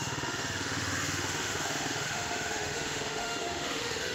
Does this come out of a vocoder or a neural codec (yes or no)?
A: yes